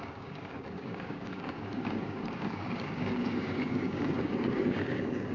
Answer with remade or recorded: remade